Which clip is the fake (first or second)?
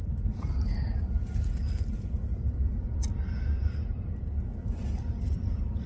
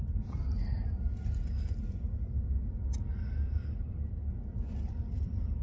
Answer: first